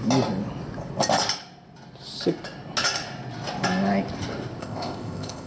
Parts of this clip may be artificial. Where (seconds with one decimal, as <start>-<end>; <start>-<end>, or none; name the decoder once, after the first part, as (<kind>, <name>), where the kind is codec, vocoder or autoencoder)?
4.6-5.5 (codec, ZipCodec)